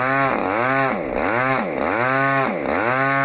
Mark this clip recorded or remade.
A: recorded